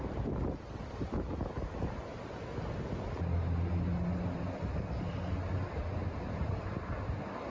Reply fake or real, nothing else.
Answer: real